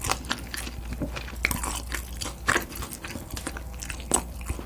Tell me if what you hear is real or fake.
real